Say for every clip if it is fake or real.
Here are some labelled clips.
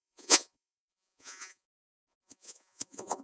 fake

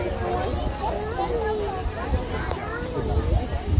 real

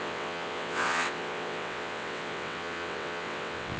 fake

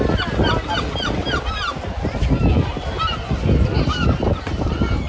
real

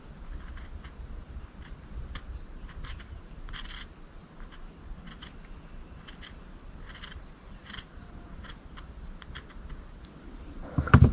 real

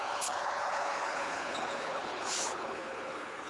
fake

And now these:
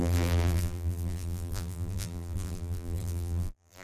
fake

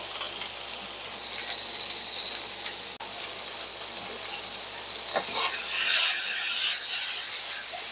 real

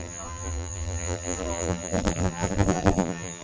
fake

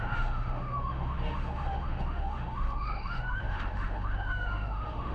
fake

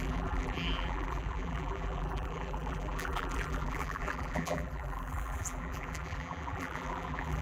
fake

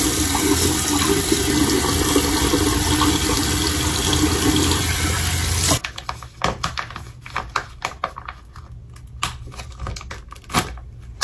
real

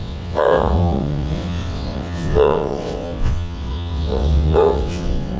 fake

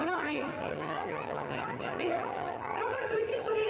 fake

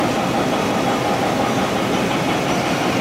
real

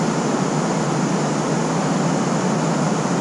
real